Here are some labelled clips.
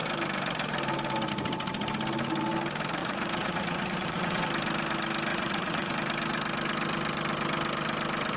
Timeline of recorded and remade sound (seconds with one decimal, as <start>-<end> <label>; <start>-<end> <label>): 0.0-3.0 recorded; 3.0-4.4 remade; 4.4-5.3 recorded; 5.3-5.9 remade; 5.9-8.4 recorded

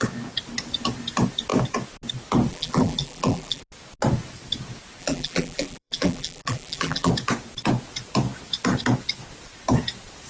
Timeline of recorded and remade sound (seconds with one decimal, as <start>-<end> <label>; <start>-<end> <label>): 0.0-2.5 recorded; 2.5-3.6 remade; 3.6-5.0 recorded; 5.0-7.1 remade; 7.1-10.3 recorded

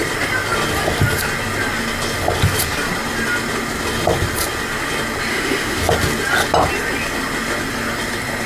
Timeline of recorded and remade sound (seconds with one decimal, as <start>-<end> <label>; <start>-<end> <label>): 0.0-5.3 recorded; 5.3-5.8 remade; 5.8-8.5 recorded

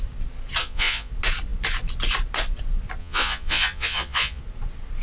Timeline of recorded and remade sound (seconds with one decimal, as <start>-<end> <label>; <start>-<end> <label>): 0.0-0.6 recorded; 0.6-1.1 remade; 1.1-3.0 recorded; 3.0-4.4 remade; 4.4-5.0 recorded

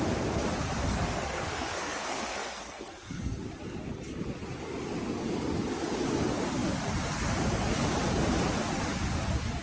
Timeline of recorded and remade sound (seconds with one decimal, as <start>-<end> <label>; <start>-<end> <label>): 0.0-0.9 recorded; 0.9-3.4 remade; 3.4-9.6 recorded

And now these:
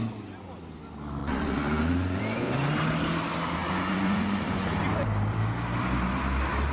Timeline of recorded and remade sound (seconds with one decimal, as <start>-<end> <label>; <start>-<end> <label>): 0.0-1.2 recorded; 1.2-2.2 remade; 2.2-3.6 recorded; 3.6-4.7 remade; 4.7-6.7 recorded

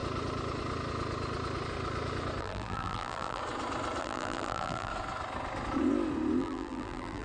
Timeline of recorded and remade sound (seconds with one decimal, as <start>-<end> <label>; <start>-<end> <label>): 0.0-2.4 recorded; 2.4-3.4 remade; 3.4-4.0 recorded; 4.0-4.9 remade; 4.9-6.4 recorded; 6.4-7.2 remade